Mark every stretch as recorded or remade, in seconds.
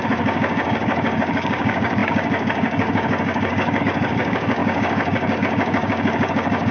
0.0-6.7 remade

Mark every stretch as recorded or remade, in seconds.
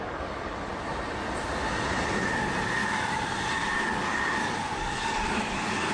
0.0-0.7 remade; 0.7-3.9 recorded; 3.9-5.9 remade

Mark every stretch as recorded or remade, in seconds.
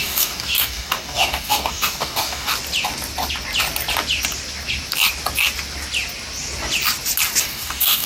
0.0-2.5 remade; 2.5-7.4 recorded; 7.4-8.1 remade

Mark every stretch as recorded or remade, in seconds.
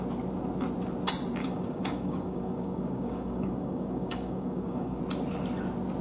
0.0-1.4 recorded; 1.4-5.0 remade; 5.0-6.0 recorded